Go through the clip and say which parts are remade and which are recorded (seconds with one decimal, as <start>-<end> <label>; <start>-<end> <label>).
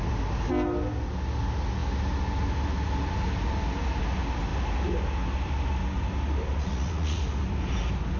0.0-6.6 recorded; 6.6-7.2 remade; 7.2-8.2 recorded